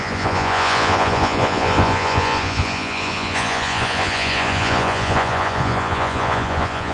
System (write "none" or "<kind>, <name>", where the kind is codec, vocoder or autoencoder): vocoder, Vocos